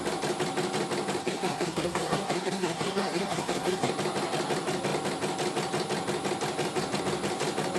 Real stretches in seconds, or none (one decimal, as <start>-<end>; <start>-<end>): 0.0-1.2; 3.9-7.8